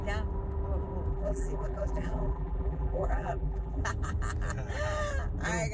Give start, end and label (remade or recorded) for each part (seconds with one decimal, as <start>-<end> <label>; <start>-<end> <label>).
0.0-1.1 recorded; 1.1-3.8 remade; 3.8-5.7 recorded